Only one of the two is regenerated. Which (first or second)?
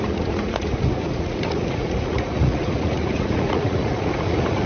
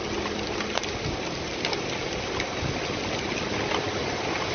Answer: first